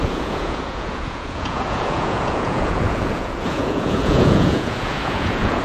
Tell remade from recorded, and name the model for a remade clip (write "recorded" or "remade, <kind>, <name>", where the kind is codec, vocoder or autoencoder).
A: remade, vocoder, Vocos